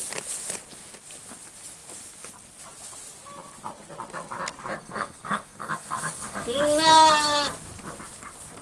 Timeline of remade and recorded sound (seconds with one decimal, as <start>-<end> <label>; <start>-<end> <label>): 0.0-4.8 recorded; 4.8-6.6 remade; 6.6-8.6 recorded